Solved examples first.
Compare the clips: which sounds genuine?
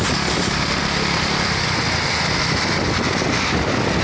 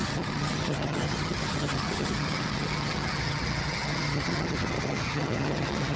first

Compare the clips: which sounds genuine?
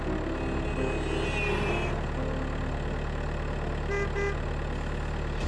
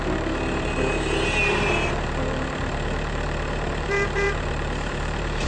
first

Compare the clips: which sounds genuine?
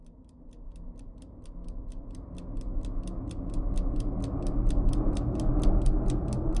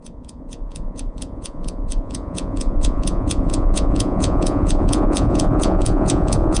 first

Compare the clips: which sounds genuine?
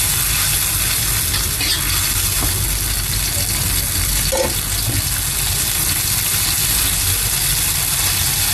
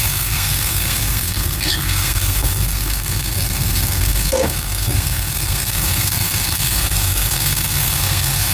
first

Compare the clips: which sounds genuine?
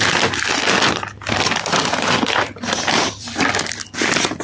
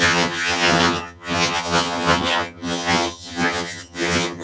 first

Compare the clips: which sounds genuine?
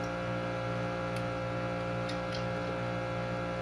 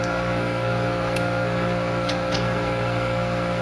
first